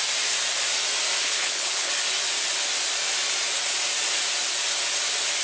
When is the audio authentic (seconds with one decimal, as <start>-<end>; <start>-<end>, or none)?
0.0-1.2; 1.9-5.4